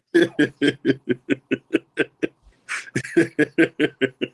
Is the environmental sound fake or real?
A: real